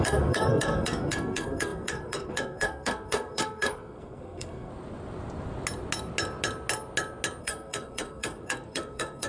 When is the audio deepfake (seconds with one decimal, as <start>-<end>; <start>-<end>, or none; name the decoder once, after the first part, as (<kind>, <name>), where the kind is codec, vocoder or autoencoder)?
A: 0.0-4.7 (codec, SNAC); 7.4-9.3